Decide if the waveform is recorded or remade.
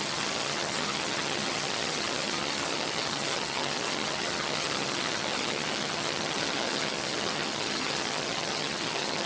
remade